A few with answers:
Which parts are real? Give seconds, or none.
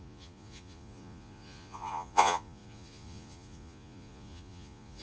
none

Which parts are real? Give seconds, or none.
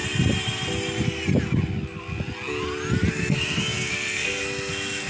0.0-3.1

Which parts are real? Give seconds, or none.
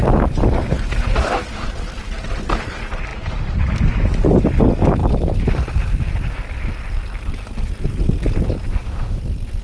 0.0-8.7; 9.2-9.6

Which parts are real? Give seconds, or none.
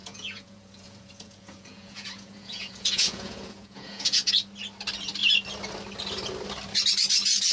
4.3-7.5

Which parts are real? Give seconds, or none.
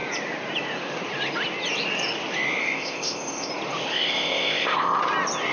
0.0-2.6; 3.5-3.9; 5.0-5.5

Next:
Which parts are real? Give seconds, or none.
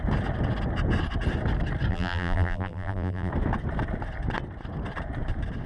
0.0-1.9; 3.3-5.7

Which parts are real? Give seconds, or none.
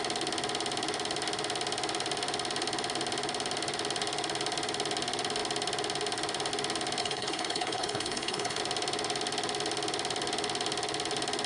0.0-7.0; 8.6-11.5